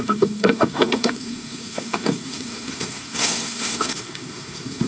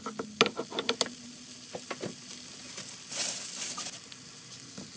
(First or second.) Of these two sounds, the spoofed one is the first